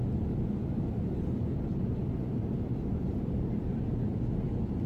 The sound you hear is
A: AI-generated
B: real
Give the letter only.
B